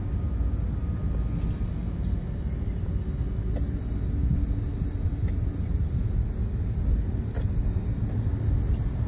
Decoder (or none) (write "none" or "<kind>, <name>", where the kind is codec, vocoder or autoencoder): none